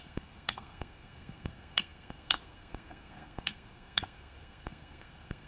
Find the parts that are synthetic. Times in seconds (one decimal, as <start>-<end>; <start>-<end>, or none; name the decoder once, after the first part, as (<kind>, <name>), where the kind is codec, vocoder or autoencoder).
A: 0.0-5.5 (codec, SNAC)